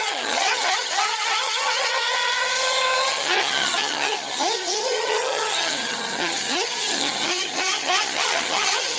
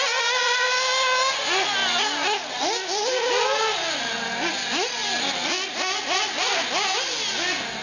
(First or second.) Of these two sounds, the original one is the second